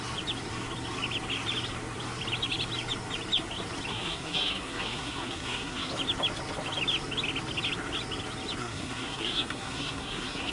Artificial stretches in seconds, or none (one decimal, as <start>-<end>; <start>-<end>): 3.9-5.9; 8.6-10.5